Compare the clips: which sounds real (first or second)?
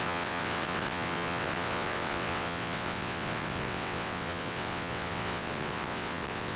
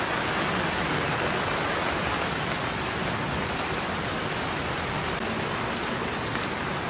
second